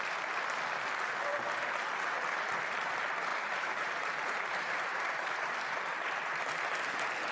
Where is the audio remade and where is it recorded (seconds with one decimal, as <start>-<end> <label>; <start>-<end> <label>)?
0.0-3.3 recorded; 3.3-6.4 remade; 6.4-7.3 recorded